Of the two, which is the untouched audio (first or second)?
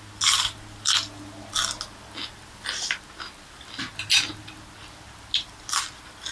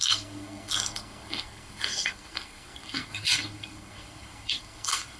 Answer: first